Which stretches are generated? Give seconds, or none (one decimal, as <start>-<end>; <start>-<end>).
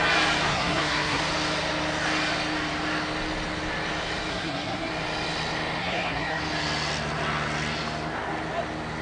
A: 0.5-1.2; 4.3-4.9; 5.8-6.4